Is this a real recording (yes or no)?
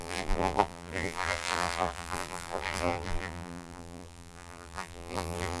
no